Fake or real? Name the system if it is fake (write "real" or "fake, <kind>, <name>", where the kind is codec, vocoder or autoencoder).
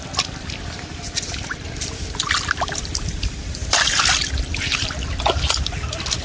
real